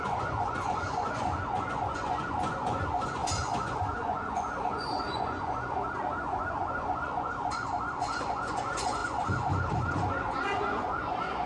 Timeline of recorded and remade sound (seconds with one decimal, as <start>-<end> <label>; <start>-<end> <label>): 0.0-11.5 remade